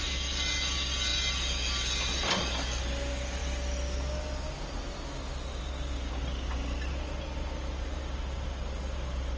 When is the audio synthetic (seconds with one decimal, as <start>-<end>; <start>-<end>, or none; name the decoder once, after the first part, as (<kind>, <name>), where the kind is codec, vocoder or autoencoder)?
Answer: none